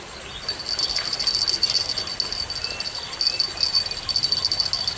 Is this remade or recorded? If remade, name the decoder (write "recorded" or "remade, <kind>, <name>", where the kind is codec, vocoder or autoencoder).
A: recorded